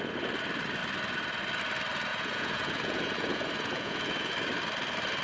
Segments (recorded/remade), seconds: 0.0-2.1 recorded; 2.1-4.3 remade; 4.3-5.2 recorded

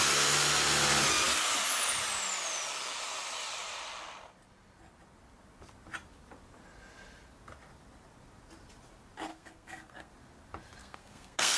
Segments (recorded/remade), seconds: 0.0-9.3 recorded; 9.3-10.1 remade; 10.1-10.8 recorded; 10.8-11.6 remade

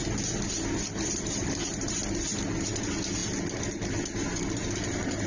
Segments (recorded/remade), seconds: 0.0-5.3 recorded

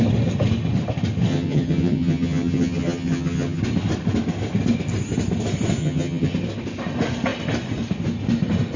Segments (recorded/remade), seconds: 0.0-1.3 recorded; 1.3-3.6 remade; 3.6-5.8 recorded; 5.8-6.3 remade; 6.3-8.8 recorded

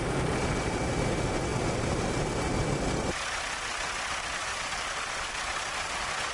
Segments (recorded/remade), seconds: 0.0-6.3 recorded

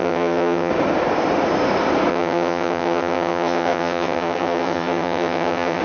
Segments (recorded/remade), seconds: 0.0-0.7 remade; 0.7-2.1 recorded; 2.1-5.8 remade

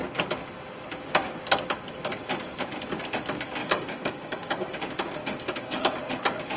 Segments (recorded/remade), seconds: 0.0-3.6 recorded; 3.6-4.8 remade; 4.8-5.2 recorded; 5.2-5.8 remade; 5.8-6.6 recorded